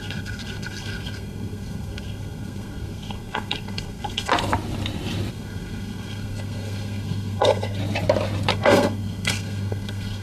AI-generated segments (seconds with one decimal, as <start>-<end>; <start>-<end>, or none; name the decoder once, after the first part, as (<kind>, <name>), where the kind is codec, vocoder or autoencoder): 0.0-4.3 (codec, SNAC); 5.3-7.8; 8.5-10.2

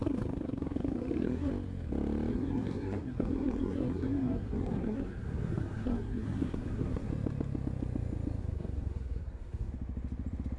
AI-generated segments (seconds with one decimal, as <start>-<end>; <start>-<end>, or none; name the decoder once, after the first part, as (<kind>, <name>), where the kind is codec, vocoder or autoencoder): 0.0-1.5 (codec, SNAC); 2.3-7.1; 8.4-9.7

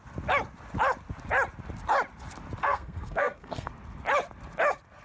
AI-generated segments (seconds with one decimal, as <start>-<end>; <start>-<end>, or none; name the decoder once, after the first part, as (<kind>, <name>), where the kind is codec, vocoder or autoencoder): 2.6-3.7 (codec, SNAC)

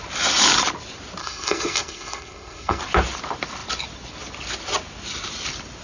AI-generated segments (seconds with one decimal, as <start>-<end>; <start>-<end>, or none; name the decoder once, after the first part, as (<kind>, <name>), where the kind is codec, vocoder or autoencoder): 1.2-2.8 (codec, SNAC)

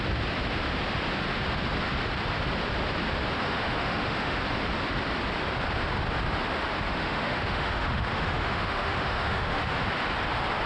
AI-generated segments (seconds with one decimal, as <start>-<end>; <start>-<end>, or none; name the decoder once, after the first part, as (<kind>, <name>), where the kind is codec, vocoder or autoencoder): 3.4-4.4 (autoencoder, DAC-VAE); 6.9-9.8

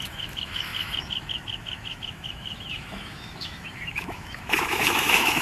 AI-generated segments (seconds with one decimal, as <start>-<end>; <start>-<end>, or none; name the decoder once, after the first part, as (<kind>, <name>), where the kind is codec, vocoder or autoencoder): 0.0-5.4 (autoencoder, DAC-VAE)

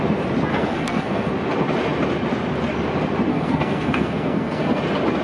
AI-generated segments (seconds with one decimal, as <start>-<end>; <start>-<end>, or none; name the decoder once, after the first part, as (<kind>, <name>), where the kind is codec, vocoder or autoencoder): 0.5-1.3 (codec, SNAC); 3.3-4.8